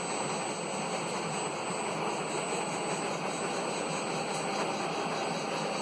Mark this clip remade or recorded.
recorded